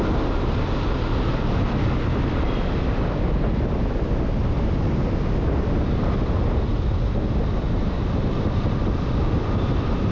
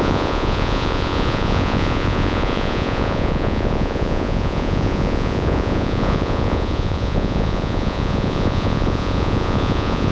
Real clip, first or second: first